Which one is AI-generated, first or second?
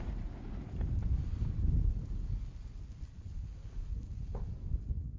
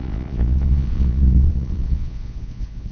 second